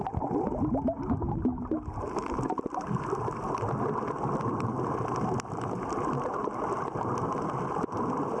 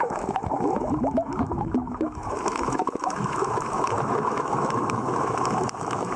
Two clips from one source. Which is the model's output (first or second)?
second